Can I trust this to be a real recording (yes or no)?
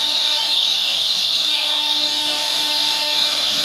no